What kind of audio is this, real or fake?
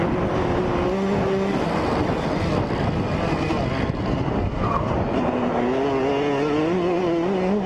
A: real